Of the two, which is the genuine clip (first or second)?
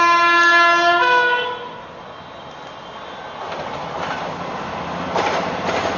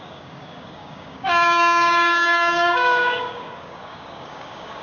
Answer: first